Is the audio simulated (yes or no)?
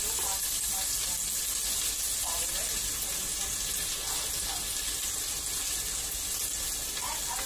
no